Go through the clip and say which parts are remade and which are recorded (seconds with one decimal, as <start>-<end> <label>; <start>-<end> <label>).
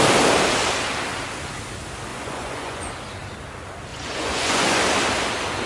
0.0-2.1 recorded; 2.1-2.9 remade; 2.9-3.9 recorded; 3.9-4.8 remade; 4.8-5.7 recorded